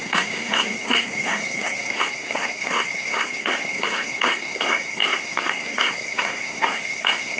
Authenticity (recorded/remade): remade